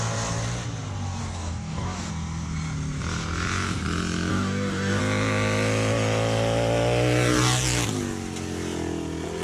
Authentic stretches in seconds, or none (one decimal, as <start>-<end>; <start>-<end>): 0.0-1.2; 2.1-4.3; 5.0-9.4